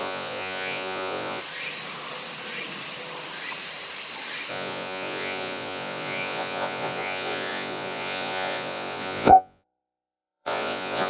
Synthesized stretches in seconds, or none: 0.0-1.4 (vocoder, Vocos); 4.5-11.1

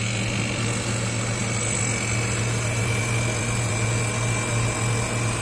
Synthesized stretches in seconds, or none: none

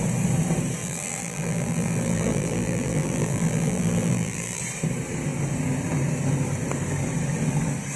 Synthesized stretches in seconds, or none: 0.8-4.6 (vocoder, BigVGAN v2)

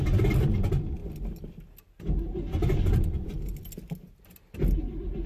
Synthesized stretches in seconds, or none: none